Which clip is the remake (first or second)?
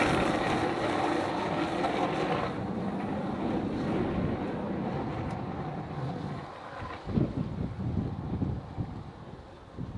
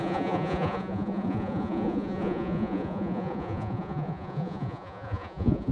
second